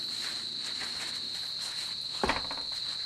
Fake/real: real